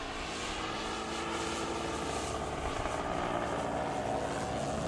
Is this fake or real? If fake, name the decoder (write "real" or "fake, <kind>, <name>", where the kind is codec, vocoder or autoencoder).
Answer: real